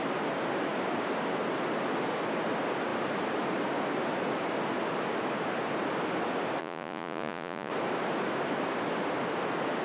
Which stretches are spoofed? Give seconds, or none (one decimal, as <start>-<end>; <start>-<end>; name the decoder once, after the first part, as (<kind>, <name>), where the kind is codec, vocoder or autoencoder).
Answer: 6.6-7.7 (vocoder, Vocos)